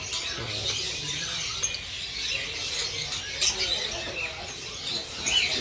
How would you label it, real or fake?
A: real